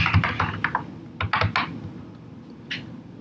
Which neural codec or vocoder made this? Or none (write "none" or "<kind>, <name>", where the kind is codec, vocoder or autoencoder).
none